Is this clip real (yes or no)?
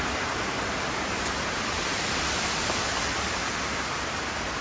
yes